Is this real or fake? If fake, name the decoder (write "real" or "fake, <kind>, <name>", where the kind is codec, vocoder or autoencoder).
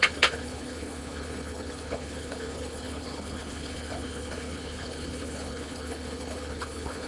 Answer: fake, codec, HILCodec